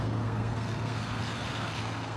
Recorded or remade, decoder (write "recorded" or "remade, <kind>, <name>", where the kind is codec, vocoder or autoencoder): remade, codec, SNAC